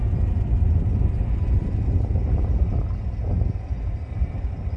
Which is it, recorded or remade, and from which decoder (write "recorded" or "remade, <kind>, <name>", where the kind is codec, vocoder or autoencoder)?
recorded